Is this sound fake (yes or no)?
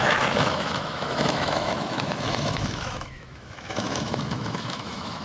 yes